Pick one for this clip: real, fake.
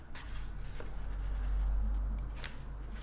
real